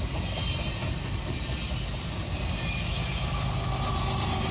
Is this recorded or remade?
recorded